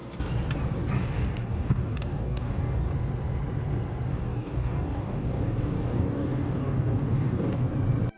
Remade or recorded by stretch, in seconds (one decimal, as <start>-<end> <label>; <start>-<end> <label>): 0.0-1.0 recorded; 1.0-2.9 remade; 2.9-4.1 recorded; 4.1-7.6 remade; 7.6-8.2 recorded